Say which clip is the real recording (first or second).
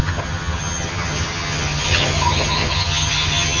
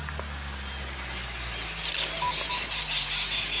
second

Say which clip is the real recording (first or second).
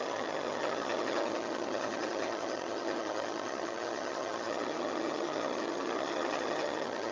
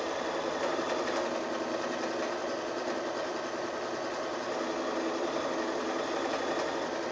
second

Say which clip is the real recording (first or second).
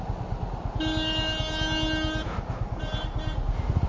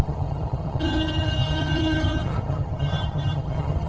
first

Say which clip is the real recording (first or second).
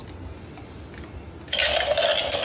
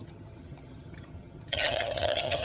first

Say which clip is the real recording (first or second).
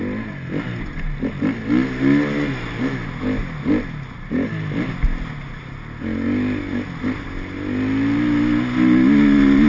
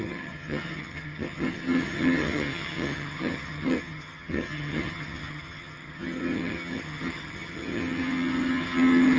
first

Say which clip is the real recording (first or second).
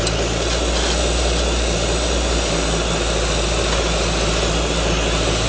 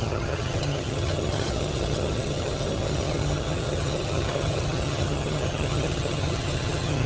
first